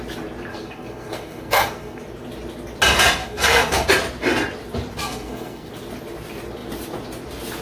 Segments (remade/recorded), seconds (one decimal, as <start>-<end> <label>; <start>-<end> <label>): 0.0-0.5 recorded; 0.5-2.0 remade; 2.0-3.2 recorded; 3.2-3.9 remade; 3.9-5.0 recorded; 5.0-5.7 remade; 5.7-7.6 recorded